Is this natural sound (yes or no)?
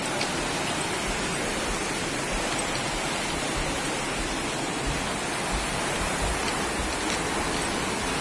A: yes